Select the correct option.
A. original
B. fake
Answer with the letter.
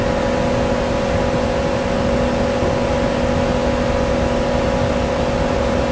A